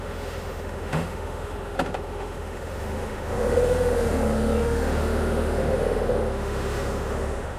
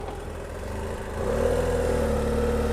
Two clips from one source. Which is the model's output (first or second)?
first